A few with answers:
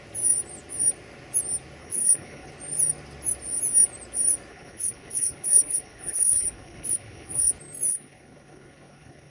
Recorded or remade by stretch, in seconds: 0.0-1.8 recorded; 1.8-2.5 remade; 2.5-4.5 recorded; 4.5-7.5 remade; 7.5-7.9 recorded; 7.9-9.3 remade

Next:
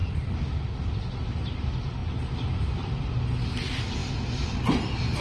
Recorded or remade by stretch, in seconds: 0.0-5.2 recorded

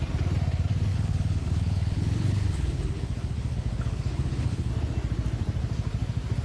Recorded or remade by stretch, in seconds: 0.0-0.9 recorded; 0.9-4.7 remade; 4.7-6.4 recorded

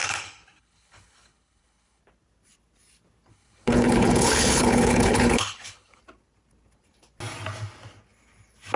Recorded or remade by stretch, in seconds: 0.0-2.0 remade; 2.0-3.3 recorded; 3.3-6.0 remade; 6.0-8.8 recorded

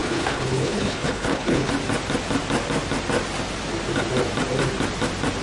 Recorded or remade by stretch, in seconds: 0.0-1.7 remade; 1.7-5.4 recorded

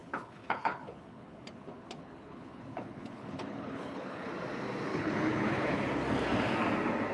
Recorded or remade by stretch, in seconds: 0.0-4.3 remade; 4.3-4.9 recorded; 4.9-5.8 remade; 5.8-7.1 recorded

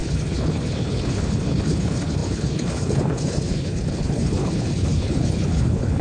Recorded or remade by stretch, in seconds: 0.0-6.0 remade

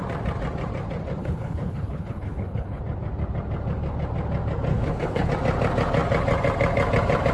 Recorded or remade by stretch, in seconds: 0.0-1.2 recorded; 1.2-2.8 remade; 2.8-4.7 recorded; 4.7-5.3 remade; 5.3-7.3 recorded